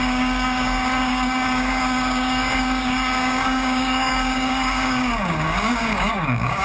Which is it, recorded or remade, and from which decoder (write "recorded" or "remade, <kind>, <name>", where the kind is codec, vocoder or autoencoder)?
remade, codec, DAC